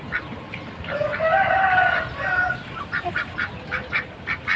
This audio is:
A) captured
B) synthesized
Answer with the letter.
A